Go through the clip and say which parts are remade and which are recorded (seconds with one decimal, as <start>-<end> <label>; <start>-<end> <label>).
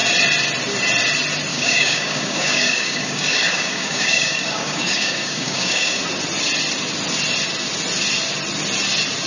0.0-1.5 recorded; 1.5-6.0 remade; 6.0-9.3 recorded